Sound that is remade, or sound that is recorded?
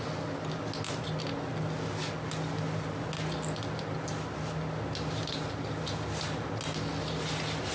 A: recorded